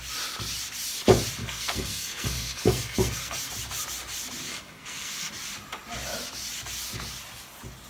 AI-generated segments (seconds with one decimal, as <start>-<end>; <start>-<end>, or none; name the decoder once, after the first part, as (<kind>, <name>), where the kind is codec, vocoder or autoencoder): 1.4-3.5 (codec, SNAC); 4.5-5.3